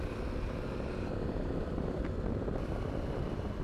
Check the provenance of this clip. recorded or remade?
recorded